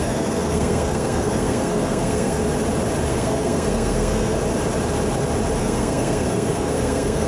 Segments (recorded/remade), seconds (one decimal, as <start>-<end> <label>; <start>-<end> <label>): 0.0-2.4 remade; 2.4-3.1 recorded; 3.1-4.4 remade; 4.4-5.6 recorded; 5.6-7.3 remade